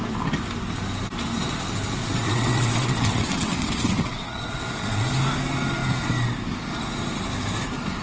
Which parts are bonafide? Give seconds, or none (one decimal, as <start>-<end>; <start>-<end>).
0.0-2.0; 5.1-8.0